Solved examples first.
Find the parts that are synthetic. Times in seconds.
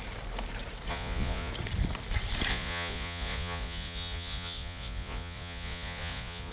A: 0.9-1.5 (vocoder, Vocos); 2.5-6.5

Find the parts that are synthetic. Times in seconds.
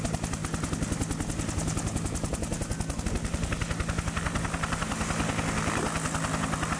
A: none